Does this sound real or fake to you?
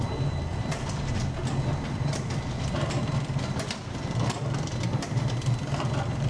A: fake